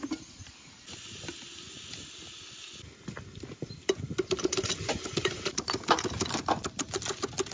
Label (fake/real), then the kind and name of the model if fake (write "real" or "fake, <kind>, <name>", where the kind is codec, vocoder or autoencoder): real